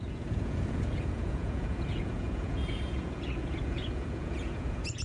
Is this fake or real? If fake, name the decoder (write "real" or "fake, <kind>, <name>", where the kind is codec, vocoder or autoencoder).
fake, vocoder, Vocos